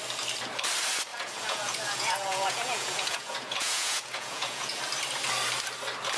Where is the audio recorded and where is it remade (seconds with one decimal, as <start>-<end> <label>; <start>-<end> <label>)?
0.0-1.1 recorded; 1.1-4.8 remade; 4.8-6.2 recorded